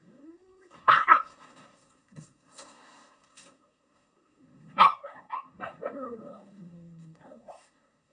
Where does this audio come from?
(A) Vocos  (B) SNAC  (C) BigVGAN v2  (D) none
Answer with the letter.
B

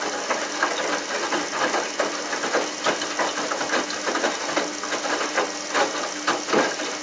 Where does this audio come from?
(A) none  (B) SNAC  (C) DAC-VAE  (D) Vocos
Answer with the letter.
A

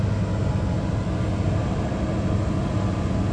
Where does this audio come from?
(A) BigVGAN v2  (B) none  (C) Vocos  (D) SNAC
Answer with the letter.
B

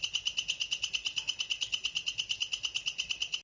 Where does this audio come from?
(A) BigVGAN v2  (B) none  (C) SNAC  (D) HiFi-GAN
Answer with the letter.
B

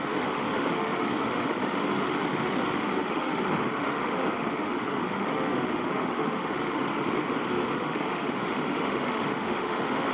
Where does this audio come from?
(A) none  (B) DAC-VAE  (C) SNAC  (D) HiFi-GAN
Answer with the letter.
B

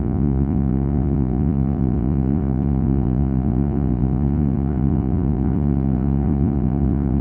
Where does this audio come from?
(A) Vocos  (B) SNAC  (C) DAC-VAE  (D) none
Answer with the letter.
A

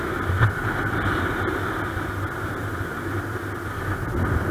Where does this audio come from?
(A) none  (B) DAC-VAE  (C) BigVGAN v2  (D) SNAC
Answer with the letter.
A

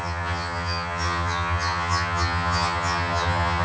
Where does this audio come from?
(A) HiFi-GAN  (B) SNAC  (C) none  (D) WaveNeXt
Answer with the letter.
A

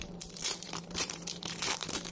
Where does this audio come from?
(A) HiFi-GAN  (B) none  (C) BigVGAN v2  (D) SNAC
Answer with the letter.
C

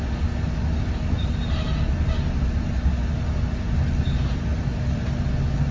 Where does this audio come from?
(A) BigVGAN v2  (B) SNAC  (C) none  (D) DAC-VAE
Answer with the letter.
C